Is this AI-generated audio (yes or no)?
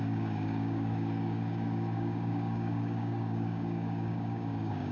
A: yes